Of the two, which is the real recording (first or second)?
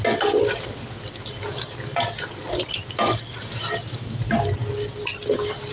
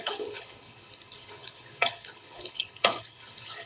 first